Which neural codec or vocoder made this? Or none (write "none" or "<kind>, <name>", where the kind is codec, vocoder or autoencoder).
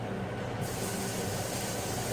none